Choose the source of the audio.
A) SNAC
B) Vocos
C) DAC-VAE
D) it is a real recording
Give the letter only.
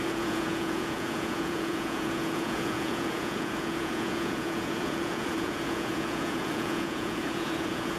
B